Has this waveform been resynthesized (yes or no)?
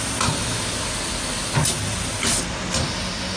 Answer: no